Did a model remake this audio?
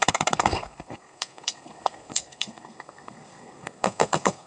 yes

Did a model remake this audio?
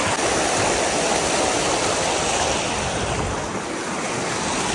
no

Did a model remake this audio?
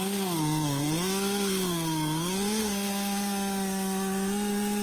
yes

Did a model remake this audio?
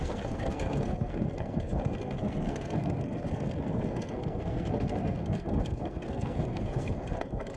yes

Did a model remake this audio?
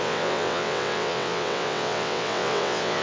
yes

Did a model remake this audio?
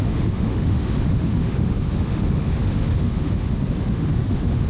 yes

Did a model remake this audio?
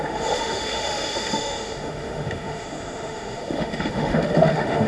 yes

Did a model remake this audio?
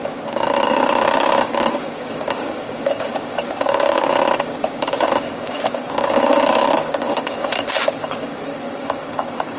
yes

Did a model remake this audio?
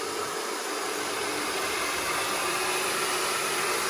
no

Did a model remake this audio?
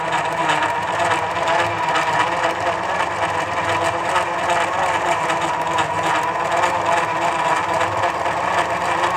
yes